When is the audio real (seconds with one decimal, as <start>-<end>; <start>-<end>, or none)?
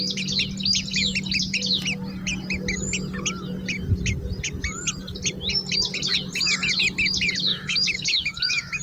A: 0.0-7.5